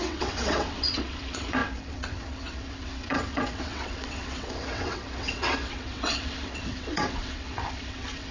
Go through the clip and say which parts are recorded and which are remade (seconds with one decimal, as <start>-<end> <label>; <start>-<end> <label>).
0.0-8.3 remade